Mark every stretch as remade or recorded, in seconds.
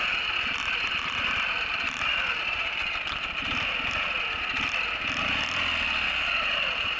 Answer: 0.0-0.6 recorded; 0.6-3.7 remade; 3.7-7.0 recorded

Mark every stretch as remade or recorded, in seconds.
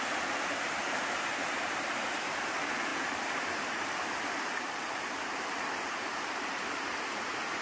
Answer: 0.0-1.3 recorded; 1.3-2.0 remade; 2.0-2.9 recorded; 2.9-7.6 remade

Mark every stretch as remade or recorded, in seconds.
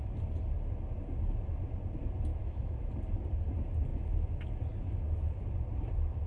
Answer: 0.0-2.3 recorded; 2.3-2.9 remade; 2.9-6.3 recorded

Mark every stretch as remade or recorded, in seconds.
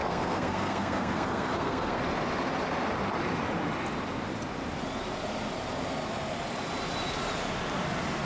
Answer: 0.0-2.0 remade; 2.0-8.3 recorded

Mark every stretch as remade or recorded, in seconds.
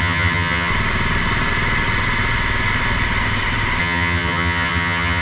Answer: 0.0-0.7 remade; 0.7-3.8 recorded; 3.8-5.2 remade